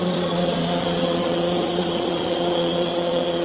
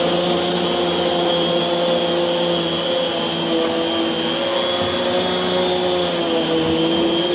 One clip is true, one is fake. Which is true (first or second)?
second